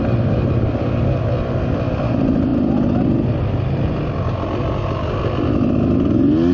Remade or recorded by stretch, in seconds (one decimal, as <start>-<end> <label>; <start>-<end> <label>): 0.0-6.5 recorded